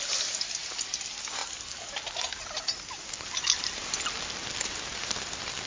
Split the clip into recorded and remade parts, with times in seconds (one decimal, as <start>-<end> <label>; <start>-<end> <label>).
0.0-5.7 recorded